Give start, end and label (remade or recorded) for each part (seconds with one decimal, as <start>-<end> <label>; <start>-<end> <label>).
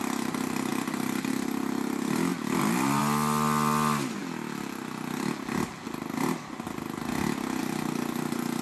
0.0-0.7 recorded; 0.7-1.3 remade; 1.3-2.3 recorded; 2.3-3.0 remade; 3.0-7.6 recorded; 7.6-8.6 remade